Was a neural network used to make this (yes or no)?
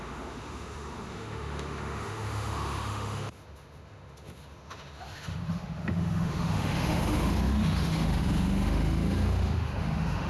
yes